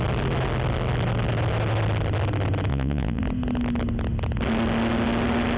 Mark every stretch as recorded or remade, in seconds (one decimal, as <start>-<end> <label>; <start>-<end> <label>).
0.0-2.7 recorded; 2.7-3.2 remade; 3.2-5.6 recorded